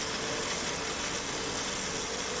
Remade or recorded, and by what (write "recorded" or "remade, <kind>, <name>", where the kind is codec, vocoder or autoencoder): recorded